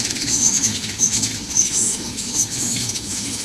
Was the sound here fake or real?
fake